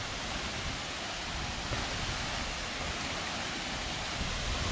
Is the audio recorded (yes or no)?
yes